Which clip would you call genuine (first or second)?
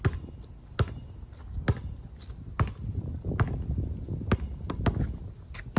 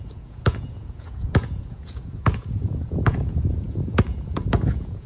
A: first